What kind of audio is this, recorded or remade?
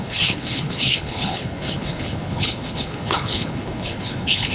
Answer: remade